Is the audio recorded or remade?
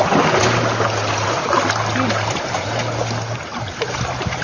recorded